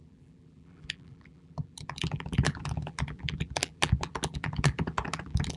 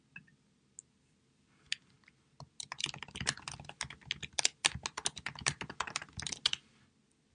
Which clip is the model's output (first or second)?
first